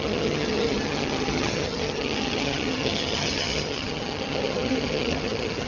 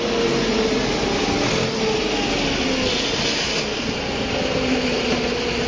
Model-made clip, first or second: first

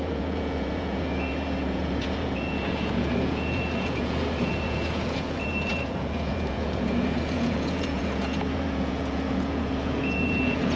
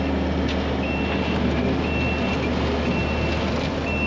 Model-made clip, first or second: first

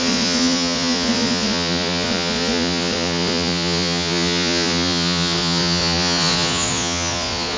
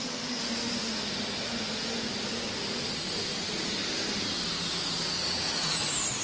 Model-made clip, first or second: first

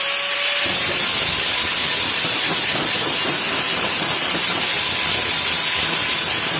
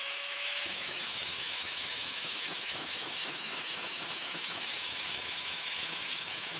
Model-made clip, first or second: second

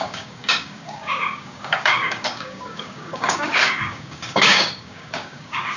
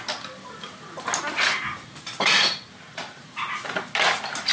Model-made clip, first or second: first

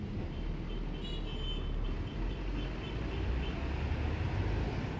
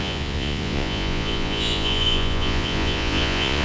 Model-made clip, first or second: second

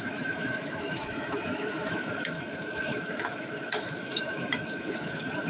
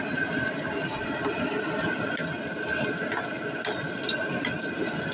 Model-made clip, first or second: first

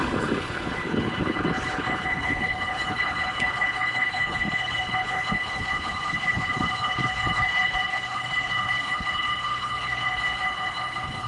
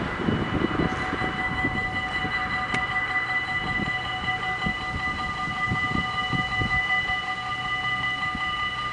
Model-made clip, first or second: first